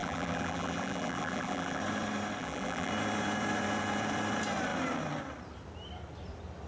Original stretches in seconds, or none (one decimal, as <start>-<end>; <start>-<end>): 1.8-2.4; 2.9-6.7